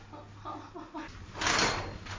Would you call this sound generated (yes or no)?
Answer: no